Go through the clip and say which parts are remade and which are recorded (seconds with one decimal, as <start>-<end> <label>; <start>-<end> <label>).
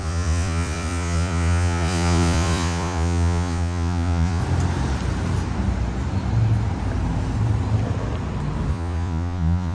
0.0-4.4 remade; 4.4-8.7 recorded; 8.7-9.7 remade